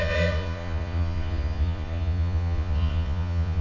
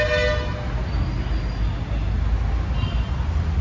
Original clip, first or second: second